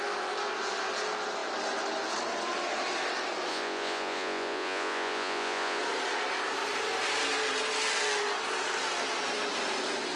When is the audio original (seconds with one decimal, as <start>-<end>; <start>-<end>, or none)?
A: 0.0-3.5; 5.8-10.2